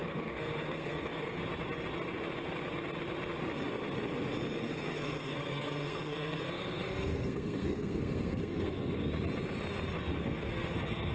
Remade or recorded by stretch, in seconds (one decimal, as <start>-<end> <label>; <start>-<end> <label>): 0.0-1.4 remade; 1.4-4.6 recorded; 4.6-8.9 remade; 8.9-10.2 recorded; 10.2-11.1 remade